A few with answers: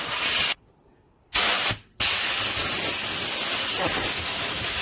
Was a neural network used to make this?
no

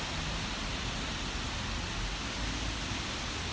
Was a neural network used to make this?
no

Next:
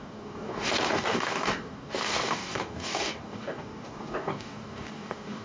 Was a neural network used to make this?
yes